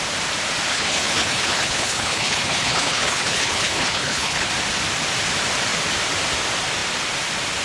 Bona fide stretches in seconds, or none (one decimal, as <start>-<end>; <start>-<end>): 0.0-0.7; 4.5-7.6